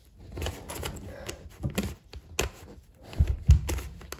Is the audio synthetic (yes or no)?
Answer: no